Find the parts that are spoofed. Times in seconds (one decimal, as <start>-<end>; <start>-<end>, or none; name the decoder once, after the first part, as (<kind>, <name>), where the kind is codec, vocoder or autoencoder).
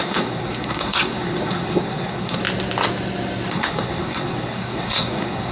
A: 0.0-2.4 (codec, SNAC); 3.5-5.5